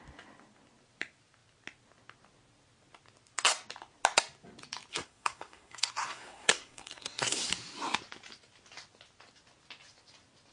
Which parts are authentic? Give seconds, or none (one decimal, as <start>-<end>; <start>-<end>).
0.0-4.9; 7.5-10.5